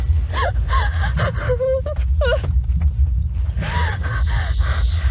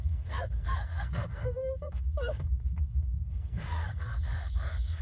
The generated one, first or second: second